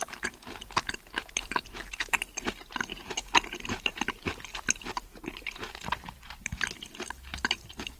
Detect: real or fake fake